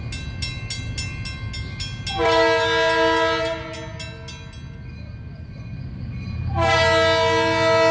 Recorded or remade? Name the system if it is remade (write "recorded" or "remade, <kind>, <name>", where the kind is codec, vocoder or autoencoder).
recorded